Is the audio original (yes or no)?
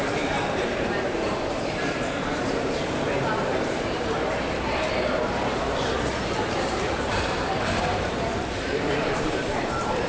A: no